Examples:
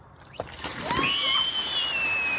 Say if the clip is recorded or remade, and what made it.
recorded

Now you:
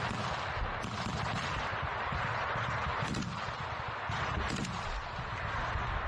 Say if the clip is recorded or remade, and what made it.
recorded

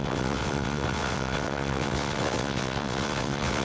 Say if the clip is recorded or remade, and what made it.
remade, vocoder, WaveNeXt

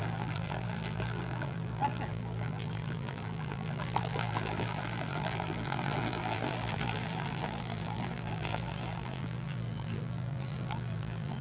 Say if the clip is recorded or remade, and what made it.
remade, vocoder, BigVGAN v2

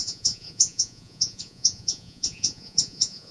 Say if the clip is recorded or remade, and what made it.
remade, vocoder, Vocos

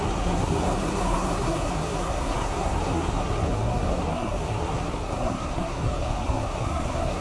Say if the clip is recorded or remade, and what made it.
remade, codec, SNAC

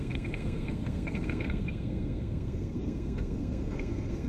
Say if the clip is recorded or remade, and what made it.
remade, codec, SNAC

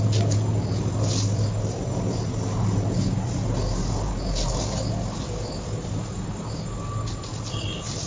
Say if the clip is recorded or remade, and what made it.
recorded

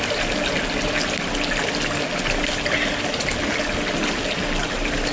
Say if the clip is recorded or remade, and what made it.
recorded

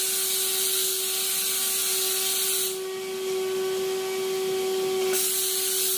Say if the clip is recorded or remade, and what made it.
recorded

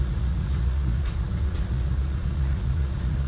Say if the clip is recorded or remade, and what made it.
remade, vocoder, Vocos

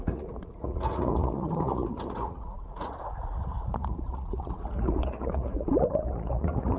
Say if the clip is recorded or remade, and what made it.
remade, vocoder, Vocos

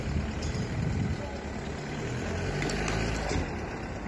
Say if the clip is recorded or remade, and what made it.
recorded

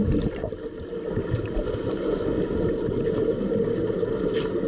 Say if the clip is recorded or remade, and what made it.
recorded